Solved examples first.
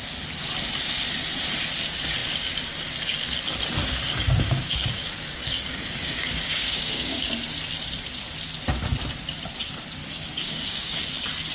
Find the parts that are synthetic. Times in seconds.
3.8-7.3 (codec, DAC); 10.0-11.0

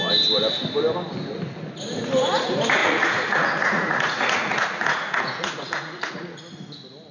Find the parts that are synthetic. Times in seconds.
2.8-6.4 (vocoder, Vocos)